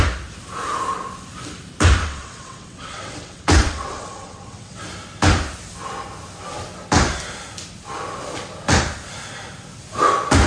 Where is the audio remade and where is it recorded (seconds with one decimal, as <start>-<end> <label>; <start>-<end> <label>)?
0.0-2.0 recorded; 2.0-4.8 remade; 4.8-10.5 recorded